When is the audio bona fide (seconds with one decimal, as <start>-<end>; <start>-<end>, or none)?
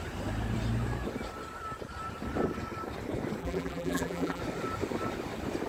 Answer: 0.0-3.4; 4.4-5.7